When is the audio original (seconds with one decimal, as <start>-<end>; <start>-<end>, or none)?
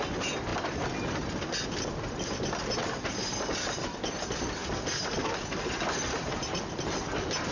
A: 0.0-7.5